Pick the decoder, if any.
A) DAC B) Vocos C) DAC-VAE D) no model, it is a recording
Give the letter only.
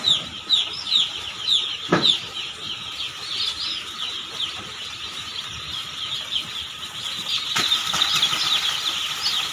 D